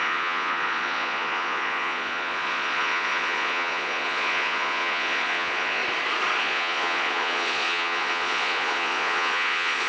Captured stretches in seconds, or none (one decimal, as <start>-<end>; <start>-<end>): 5.8-6.4